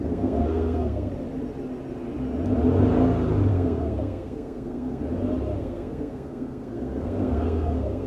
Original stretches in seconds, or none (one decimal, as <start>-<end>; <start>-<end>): 1.1-3.5; 5.0-5.6